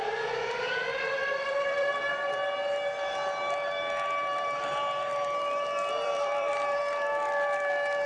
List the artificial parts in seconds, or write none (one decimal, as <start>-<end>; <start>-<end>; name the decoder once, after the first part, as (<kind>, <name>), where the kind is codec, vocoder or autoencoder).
0.0-2.4 (vocoder, BigVGAN v2); 5.9-6.8